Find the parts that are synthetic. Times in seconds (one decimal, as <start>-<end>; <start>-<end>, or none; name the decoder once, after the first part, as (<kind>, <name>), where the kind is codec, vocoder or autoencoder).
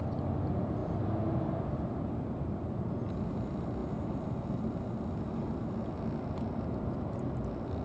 none